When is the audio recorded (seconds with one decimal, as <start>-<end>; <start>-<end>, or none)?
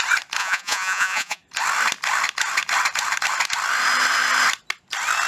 0.0-0.4; 1.4-5.3